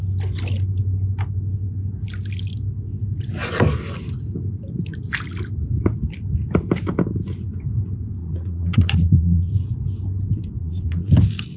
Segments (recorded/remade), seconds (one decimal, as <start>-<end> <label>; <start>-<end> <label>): 0.0-8.2 recorded; 8.2-9.5 remade; 9.5-10.6 recorded; 10.6-11.1 remade; 11.1-11.6 recorded